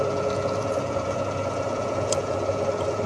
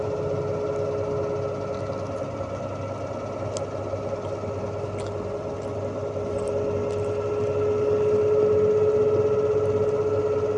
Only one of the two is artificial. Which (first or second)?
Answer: first